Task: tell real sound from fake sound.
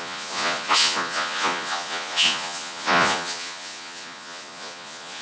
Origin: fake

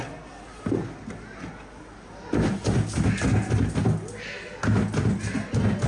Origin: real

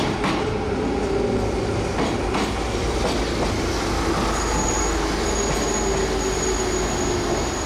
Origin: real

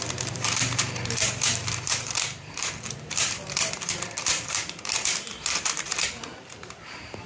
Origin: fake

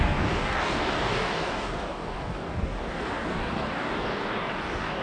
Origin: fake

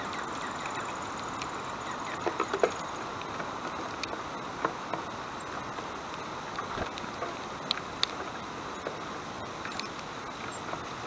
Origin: real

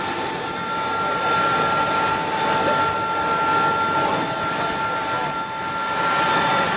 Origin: real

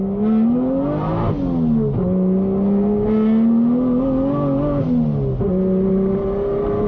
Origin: real